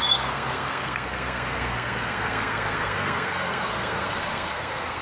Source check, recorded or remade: remade